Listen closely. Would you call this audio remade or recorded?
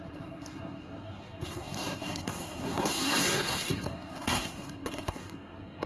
remade